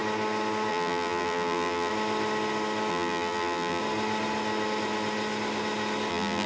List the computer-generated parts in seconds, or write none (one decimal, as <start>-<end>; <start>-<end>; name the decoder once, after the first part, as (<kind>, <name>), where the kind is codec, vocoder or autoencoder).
0.7-1.9 (vocoder, BigVGAN v2); 2.9-3.8; 6.1-6.5